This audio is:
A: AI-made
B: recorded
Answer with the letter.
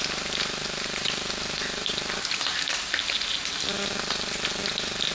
B